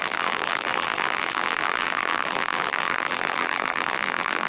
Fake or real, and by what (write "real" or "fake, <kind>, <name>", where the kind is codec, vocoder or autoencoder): fake, vocoder, BigVGAN v2